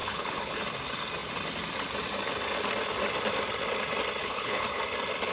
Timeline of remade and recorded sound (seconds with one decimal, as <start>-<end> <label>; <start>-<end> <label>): 0.0-0.6 remade; 0.6-4.2 recorded; 4.2-4.8 remade; 4.8-5.3 recorded